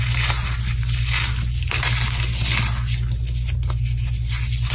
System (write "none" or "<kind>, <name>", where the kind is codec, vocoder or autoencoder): none